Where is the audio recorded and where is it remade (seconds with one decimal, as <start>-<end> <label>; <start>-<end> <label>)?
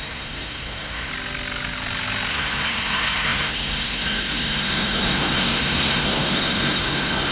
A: 0.0-1.1 remade; 1.1-2.3 recorded; 2.3-7.3 remade